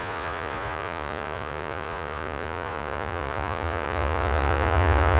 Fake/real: fake